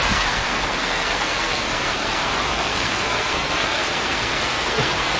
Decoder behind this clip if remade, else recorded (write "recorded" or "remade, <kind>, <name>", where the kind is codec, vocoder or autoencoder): remade, codec, SNAC